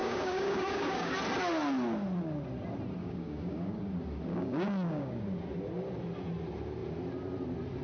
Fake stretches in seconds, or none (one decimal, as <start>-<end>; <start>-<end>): 0.0-1.1; 3.0-3.8; 4.3-5.2